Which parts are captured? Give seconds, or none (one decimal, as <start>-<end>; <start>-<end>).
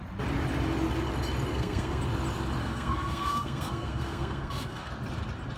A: 0.0-1.5; 2.0-2.6; 4.9-5.6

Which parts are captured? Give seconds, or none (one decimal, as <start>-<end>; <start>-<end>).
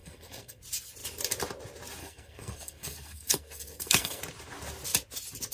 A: 0.6-2.0; 4.2-5.5